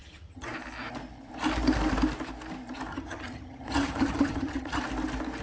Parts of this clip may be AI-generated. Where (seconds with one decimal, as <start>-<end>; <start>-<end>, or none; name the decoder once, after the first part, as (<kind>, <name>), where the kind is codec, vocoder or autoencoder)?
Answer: 0.0-0.5 (vocoder, HiFi-GAN); 2.9-4.8